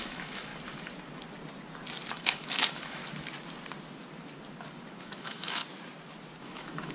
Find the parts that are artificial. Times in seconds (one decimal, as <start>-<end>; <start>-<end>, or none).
0.0-0.5; 2.1-3.0; 5.0-5.6; 6.4-6.9

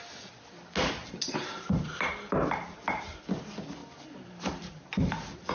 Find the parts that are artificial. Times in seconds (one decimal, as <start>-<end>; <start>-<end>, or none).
1.0-3.2; 3.8-5.5

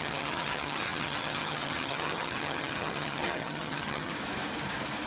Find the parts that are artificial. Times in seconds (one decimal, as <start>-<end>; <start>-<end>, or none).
0.0-4.1

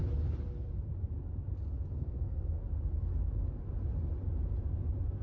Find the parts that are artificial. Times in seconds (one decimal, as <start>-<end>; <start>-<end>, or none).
1.9-2.6